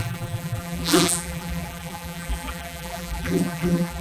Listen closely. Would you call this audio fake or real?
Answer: fake